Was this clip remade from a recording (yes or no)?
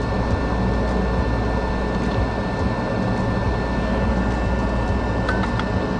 no